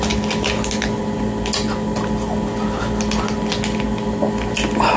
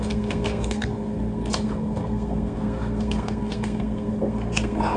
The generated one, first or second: second